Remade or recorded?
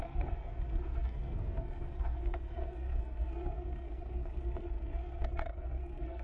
remade